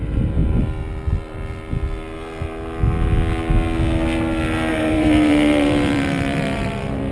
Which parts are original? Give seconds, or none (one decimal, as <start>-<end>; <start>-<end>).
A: 0.4-4.7